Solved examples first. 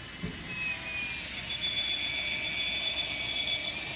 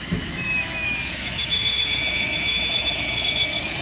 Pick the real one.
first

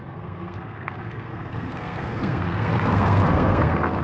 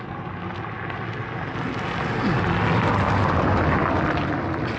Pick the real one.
second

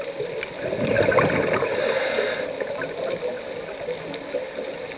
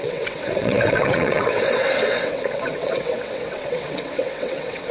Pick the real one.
first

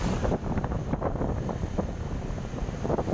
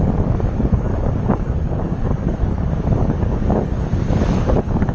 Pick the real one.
first